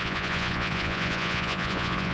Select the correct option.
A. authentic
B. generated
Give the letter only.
B